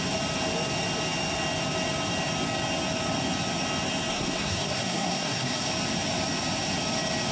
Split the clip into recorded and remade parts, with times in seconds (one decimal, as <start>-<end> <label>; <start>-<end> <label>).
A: 0.0-4.1 recorded; 4.1-5.7 remade; 5.7-7.3 recorded

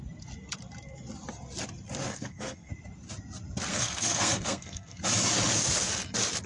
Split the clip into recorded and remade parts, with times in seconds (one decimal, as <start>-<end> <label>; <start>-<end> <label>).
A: 0.0-2.1 recorded; 2.1-2.7 remade; 2.7-3.7 recorded; 3.7-5.0 remade; 5.0-6.5 recorded

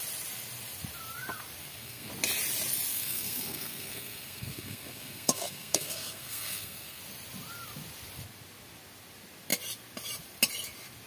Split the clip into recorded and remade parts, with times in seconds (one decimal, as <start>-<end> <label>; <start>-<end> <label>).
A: 0.0-1.6 recorded; 1.6-2.1 remade; 2.1-2.9 recorded; 2.9-7.0 remade; 7.0-11.1 recorded